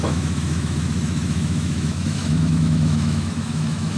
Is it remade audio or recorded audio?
remade